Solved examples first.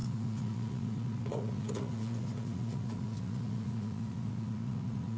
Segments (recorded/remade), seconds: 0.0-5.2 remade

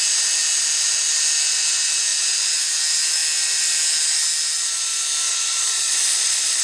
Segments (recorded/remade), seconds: 0.0-5.3 recorded; 5.3-6.6 remade